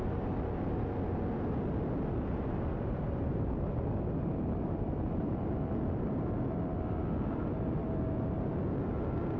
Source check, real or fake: real